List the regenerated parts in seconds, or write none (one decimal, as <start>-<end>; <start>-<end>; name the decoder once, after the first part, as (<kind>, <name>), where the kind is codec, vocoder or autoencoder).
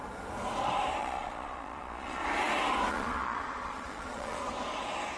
1.0-2.2 (vocoder, Vocos); 2.9-4.4